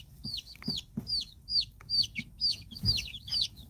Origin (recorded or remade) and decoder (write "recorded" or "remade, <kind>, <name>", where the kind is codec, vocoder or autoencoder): remade, codec, DAC